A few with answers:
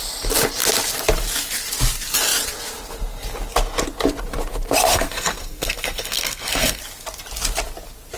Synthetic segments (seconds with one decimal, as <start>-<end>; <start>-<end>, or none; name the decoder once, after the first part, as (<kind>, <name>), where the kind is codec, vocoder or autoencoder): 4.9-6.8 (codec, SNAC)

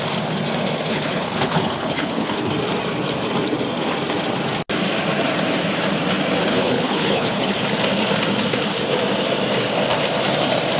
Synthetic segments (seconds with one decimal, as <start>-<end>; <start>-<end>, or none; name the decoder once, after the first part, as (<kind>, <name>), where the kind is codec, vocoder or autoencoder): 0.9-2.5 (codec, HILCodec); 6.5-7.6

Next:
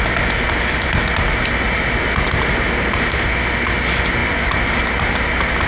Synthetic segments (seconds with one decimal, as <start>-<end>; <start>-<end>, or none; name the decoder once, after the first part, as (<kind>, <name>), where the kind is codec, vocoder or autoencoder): 4.2-4.8 (vocoder, BigVGAN v2)

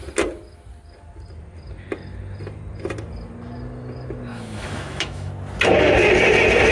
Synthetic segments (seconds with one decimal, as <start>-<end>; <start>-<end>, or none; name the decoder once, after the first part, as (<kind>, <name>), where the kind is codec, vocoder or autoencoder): 4.3-5.3 (autoencoder, DAC-VAE)

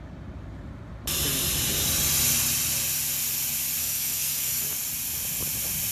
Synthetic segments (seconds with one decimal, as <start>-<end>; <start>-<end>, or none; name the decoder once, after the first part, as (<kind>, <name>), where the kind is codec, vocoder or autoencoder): 3.8-4.6 (codec, SNAC)